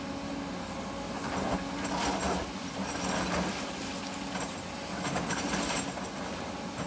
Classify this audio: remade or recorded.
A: recorded